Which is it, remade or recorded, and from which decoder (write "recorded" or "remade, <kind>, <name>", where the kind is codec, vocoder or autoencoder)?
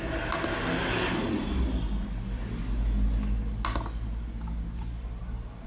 recorded